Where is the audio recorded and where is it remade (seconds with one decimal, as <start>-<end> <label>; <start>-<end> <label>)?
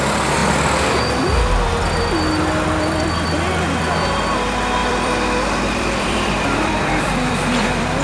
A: 0.0-0.4 recorded; 0.4-1.0 remade; 1.0-4.8 recorded; 4.8-7.3 remade; 7.3-8.0 recorded